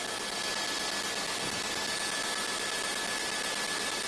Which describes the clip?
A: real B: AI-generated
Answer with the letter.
A